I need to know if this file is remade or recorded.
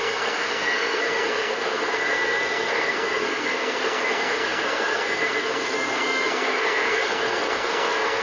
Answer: remade